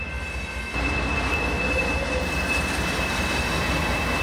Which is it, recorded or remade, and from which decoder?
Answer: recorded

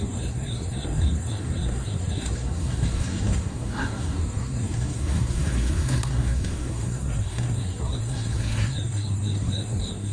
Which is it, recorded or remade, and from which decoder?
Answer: remade, codec, SNAC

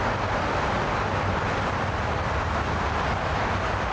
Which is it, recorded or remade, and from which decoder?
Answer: remade, vocoder, BigVGAN v2